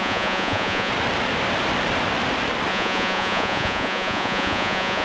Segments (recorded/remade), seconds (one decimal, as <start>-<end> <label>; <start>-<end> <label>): 0.0-0.9 remade; 0.9-2.7 recorded; 2.7-5.0 remade